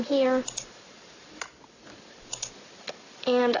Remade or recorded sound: recorded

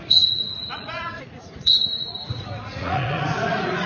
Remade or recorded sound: remade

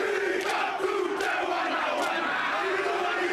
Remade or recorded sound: recorded